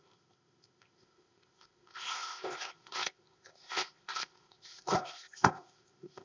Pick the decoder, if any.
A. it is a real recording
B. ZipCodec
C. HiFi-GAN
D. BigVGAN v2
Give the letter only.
B